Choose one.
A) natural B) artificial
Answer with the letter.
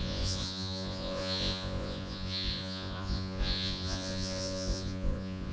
B